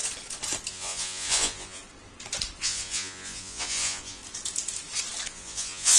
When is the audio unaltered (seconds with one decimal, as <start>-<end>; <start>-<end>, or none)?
0.0-0.7; 1.8-2.6; 4.2-5.3